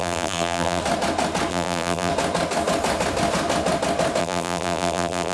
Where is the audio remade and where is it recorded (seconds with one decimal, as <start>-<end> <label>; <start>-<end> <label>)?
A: 0.0-0.8 remade; 0.8-1.5 recorded; 1.5-2.1 remade; 2.1-4.2 recorded; 4.2-5.3 remade